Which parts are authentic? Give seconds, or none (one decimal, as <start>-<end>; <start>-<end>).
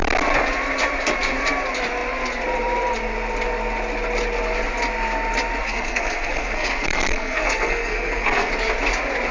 0.0-5.6; 8.5-9.3